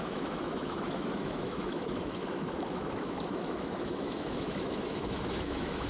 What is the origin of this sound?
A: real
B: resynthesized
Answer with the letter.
B